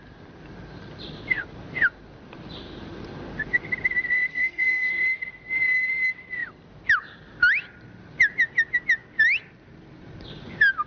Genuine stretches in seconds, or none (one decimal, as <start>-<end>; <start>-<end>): 0.0-4.3; 4.9-10.9